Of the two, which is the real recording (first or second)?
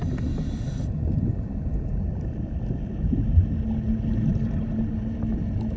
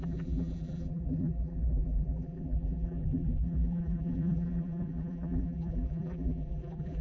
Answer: first